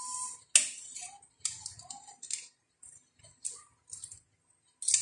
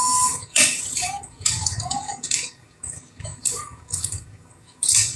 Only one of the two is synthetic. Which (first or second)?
second